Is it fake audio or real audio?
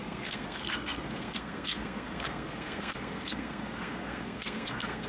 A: fake